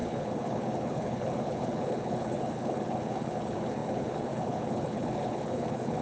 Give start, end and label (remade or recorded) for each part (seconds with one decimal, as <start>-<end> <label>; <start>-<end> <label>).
0.0-6.0 remade